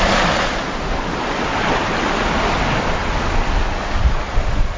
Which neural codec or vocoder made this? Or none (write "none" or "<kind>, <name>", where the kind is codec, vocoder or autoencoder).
none